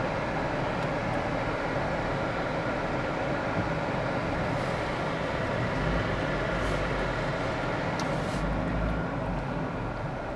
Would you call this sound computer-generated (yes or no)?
no